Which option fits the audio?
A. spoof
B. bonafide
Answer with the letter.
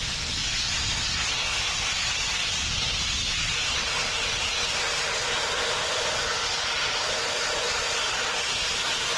B